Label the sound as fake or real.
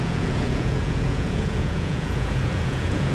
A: fake